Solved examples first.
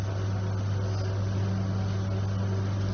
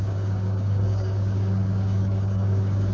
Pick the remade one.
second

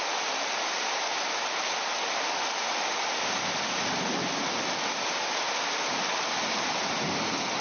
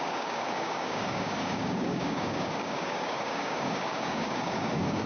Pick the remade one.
second